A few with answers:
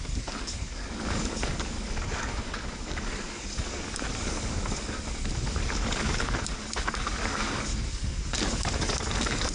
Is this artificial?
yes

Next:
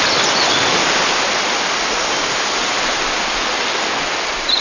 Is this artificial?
no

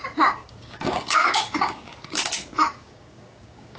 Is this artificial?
yes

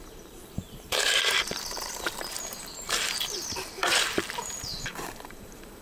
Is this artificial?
yes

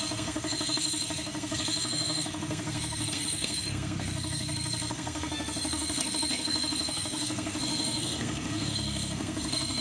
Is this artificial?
yes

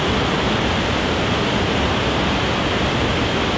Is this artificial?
no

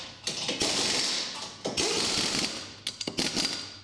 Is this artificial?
no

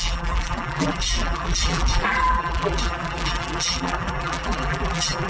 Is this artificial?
yes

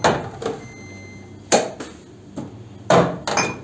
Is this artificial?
no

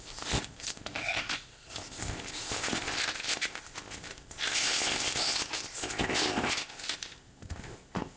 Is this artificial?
yes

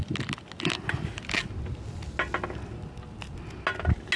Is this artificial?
no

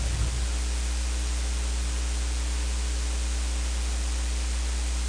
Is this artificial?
no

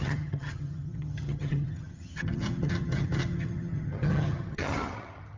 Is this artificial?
yes